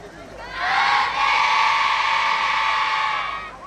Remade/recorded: recorded